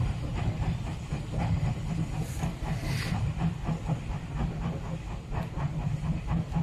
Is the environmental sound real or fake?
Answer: real